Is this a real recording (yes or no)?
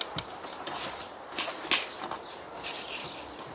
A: yes